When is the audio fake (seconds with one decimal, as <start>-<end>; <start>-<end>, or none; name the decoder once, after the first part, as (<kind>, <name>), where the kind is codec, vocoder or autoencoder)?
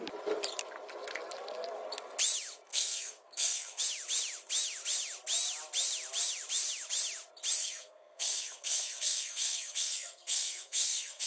2.7-3.8 (codec, SNAC); 7.6-11.3